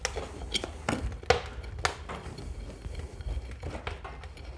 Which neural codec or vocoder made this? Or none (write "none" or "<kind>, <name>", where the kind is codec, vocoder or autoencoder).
none